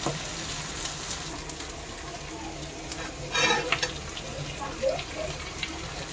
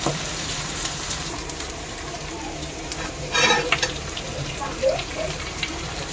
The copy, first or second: second